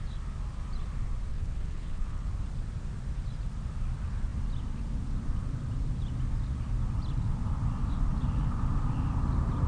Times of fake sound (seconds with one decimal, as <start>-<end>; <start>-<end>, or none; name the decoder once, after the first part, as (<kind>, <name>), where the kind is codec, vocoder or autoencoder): 1.3-2.3 (codec, HILCodec)